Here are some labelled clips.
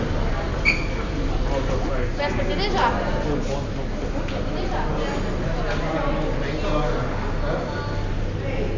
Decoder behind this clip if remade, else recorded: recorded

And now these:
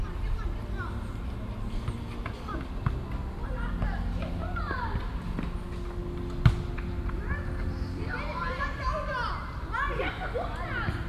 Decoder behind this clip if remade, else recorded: recorded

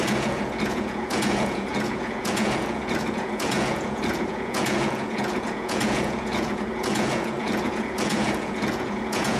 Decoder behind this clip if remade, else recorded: remade, vocoder, Vocos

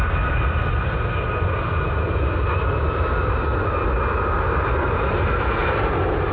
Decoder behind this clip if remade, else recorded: recorded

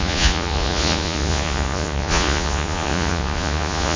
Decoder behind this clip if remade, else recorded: remade, vocoder, Vocos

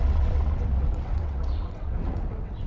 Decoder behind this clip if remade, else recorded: remade, vocoder, WaveNeXt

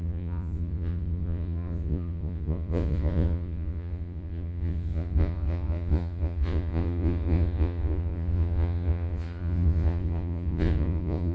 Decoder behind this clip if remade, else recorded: remade, vocoder, Vocos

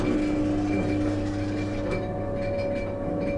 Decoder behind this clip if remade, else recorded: recorded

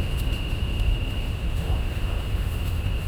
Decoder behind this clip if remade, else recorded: remade, autoencoder, DAC-VAE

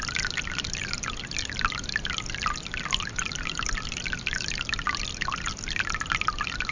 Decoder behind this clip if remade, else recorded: recorded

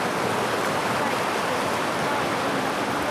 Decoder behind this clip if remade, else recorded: recorded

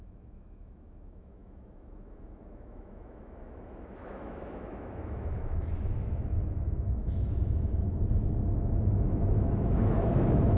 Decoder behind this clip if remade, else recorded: remade, autoencoder, DAC-VAE